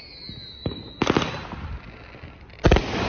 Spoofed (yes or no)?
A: no